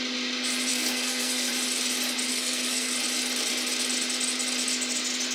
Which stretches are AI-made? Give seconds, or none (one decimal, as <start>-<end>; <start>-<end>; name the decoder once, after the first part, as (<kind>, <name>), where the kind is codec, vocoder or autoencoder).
0.7-1.5 (codec, SNAC); 2.3-2.9